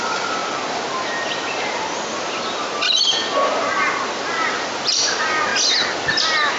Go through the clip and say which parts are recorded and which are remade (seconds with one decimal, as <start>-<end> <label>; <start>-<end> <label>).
0.0-0.4 remade; 0.4-4.4 recorded; 4.4-5.5 remade; 5.5-6.6 recorded